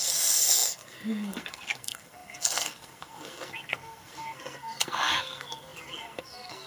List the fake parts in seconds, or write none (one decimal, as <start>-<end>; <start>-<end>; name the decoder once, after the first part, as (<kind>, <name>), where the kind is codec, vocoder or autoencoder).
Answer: 0.0-6.7 (codec, SNAC)

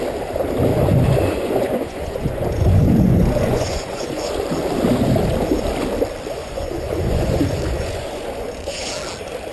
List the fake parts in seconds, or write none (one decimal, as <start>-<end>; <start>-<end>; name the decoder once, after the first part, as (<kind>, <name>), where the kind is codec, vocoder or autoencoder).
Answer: 0.7-4.3 (vocoder, Vocos); 6.4-8.9

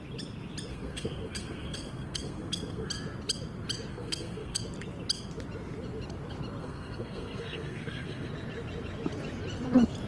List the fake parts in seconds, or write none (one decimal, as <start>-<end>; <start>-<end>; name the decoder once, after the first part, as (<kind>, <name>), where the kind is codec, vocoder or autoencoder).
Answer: 0.7-2.9 (codec, SNAC); 3.9-4.6; 6.6-8.3